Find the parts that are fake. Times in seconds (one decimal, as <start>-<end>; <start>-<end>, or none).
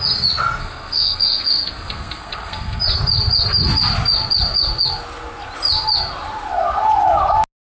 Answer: 0.6-2.8